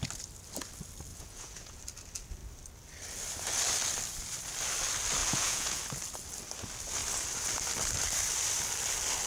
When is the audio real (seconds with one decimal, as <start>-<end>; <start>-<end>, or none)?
0.0-1.1; 1.8-5.2; 5.8-9.3